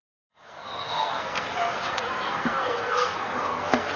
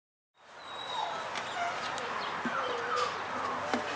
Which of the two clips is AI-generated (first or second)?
first